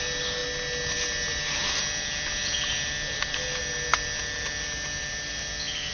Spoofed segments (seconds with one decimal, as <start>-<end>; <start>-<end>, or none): none